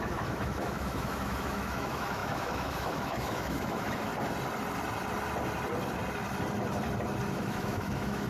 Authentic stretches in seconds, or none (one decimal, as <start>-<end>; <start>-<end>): 4.1-7.3